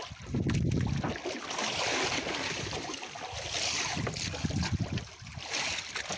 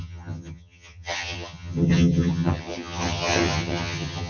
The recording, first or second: first